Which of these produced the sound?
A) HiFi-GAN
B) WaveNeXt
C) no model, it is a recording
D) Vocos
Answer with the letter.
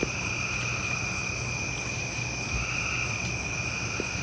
C